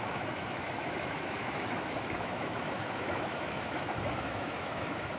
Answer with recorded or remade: remade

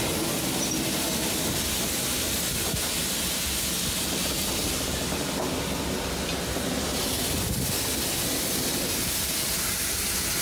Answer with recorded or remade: recorded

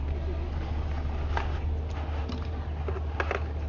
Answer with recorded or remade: recorded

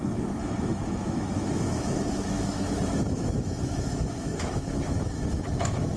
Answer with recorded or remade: remade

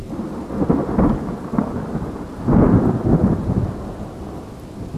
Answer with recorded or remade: recorded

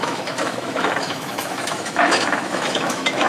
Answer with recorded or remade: remade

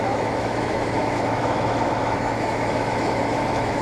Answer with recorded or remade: remade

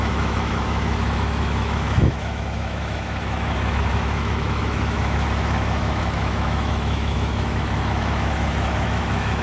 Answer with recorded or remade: remade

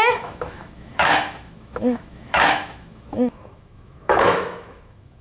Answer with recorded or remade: remade